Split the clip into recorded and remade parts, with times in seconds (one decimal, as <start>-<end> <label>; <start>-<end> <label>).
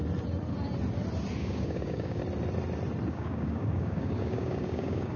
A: 0.0-1.4 recorded; 1.4-2.2 remade; 2.2-3.1 recorded; 3.1-5.2 remade